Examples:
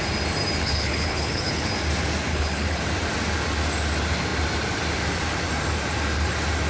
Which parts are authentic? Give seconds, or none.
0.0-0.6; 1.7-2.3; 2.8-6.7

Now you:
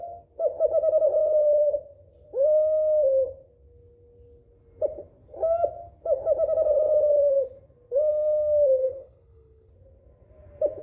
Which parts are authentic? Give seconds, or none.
0.0-8.8; 9.7-10.8

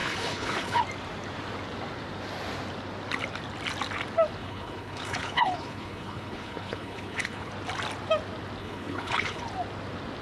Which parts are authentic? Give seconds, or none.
0.8-4.4; 7.5-8.6; 9.4-10.2

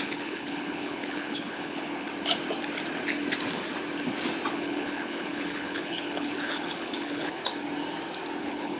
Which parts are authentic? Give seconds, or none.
2.1-4.5; 7.4-8.4

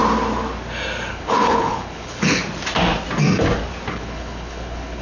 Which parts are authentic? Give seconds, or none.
0.0-1.1; 2.4-3.9